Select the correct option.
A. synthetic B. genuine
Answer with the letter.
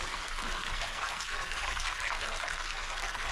A